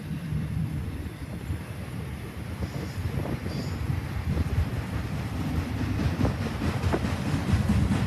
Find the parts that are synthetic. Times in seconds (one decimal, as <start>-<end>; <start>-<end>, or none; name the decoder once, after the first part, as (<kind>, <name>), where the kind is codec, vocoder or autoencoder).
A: 0.0-3.4 (vocoder, BigVGAN v2); 4.6-8.1